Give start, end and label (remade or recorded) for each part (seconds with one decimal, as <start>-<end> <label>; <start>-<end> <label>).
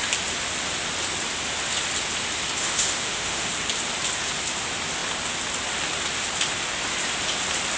0.0-2.6 recorded; 2.6-3.5 remade; 3.5-7.8 recorded